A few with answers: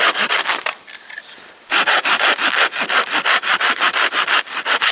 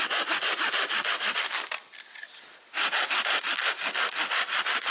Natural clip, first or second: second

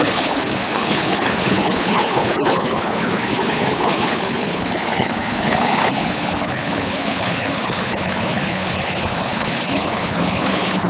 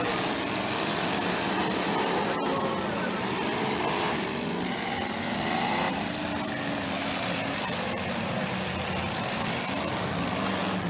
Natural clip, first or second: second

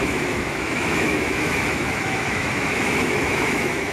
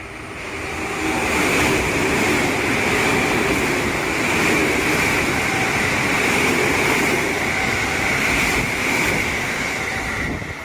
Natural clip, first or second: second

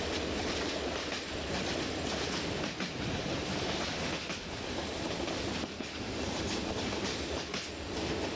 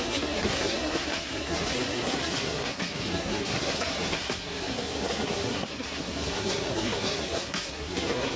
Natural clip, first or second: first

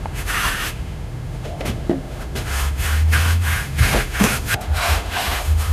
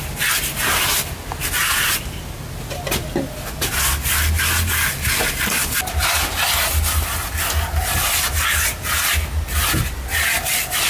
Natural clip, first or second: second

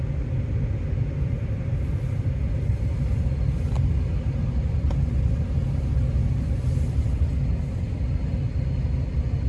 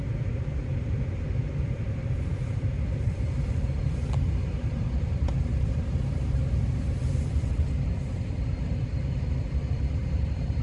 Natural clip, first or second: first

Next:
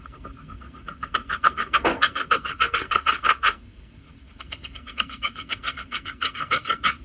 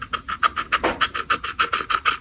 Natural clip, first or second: second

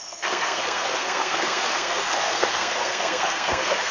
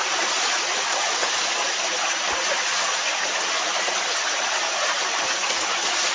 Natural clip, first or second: second